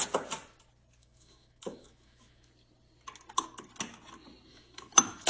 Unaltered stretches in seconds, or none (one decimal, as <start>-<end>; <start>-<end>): 0.0-1.0; 2.5-4.5